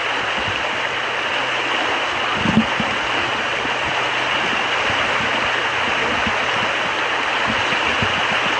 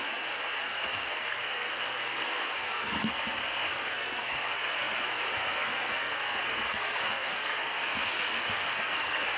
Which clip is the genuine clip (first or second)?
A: first